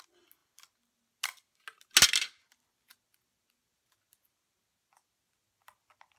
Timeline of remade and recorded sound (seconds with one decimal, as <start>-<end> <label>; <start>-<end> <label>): 0.0-6.2 recorded